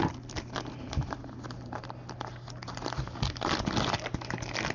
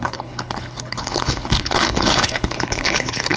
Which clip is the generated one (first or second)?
second